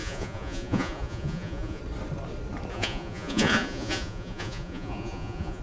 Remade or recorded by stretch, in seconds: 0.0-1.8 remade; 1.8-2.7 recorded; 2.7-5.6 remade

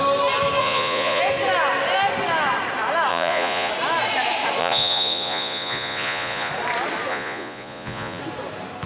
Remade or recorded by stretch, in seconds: 0.0-0.6 recorded; 0.6-1.2 remade; 1.2-3.1 recorded; 3.1-3.7 remade; 3.7-4.6 recorded; 4.6-6.5 remade; 6.5-7.1 recorded; 7.1-8.2 remade; 8.2-8.9 recorded

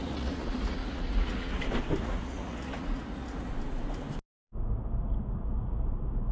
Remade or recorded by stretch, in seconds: 0.0-1.6 remade; 1.6-2.0 recorded; 2.0-3.5 remade; 3.5-6.3 recorded

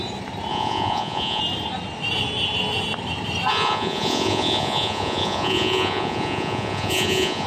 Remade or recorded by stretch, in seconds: 0.0-0.5 recorded; 0.5-1.4 remade; 1.4-3.5 recorded; 3.5-7.5 remade

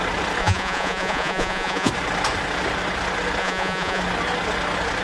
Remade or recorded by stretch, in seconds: 0.0-0.4 recorded; 0.4-1.9 remade; 1.9-3.4 recorded; 3.4-4.0 remade; 4.0-5.0 recorded

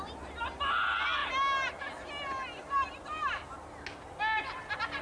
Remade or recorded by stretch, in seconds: 0.0-5.0 recorded

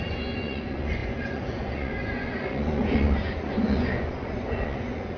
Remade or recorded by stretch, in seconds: 0.0-5.2 remade

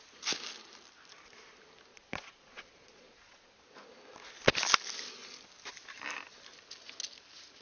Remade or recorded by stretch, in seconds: 0.0-1.9 recorded; 1.9-3.6 remade; 3.6-7.6 recorded